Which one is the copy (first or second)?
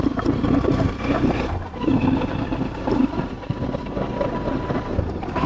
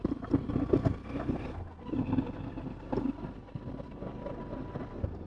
first